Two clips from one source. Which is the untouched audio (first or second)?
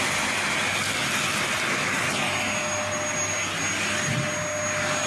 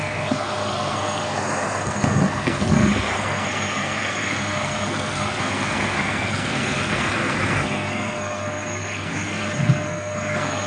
first